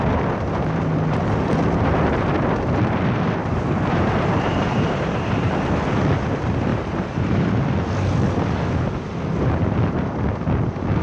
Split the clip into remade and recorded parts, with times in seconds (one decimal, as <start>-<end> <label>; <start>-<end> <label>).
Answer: 0.0-3.4 recorded; 3.4-5.7 remade; 5.7-6.7 recorded; 6.7-7.5 remade; 7.5-11.0 recorded